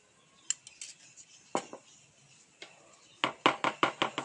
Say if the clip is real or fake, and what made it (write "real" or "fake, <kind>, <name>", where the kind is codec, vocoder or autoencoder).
real